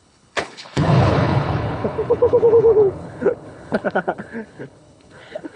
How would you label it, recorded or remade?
remade